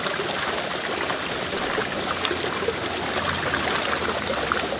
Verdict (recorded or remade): recorded